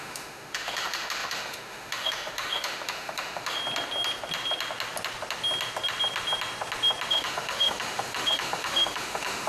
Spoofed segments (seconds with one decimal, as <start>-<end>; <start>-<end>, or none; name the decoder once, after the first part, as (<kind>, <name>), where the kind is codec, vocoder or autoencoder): 0.0-3.6 (autoencoder, DAC-VAE); 7.1-9.5